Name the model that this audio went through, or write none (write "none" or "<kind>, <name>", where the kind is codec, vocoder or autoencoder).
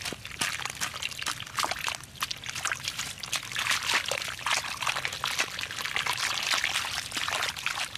none